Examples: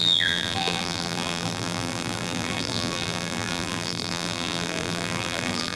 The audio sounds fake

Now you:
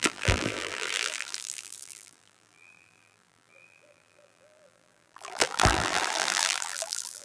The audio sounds fake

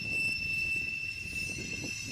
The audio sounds real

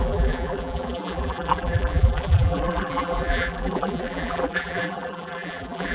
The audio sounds fake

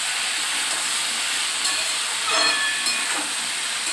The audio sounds fake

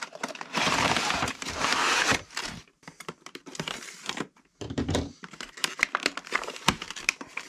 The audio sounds fake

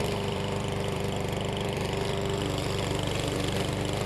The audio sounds fake